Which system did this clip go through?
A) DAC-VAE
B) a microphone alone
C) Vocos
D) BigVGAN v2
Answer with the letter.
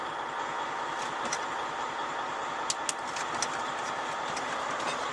B